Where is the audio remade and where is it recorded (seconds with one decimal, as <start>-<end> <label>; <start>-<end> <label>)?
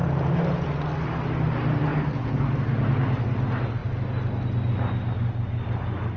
0.0-6.2 recorded